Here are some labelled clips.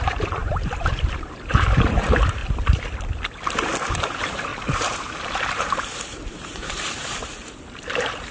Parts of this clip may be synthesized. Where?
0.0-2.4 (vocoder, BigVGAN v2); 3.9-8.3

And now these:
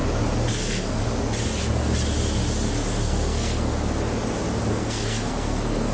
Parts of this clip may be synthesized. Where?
0.5-1.0 (codec, SNAC); 3.0-3.7; 4.7-5.9